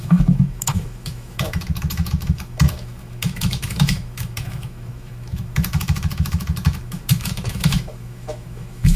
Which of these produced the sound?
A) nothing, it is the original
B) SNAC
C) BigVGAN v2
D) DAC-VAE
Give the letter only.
D